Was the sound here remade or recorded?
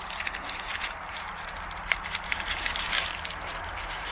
remade